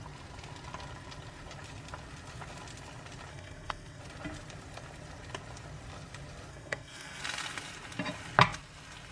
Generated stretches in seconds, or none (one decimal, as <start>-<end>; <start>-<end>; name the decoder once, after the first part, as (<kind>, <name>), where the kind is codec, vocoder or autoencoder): 3.3-4.0 (codec, SNAC); 6.5-7.2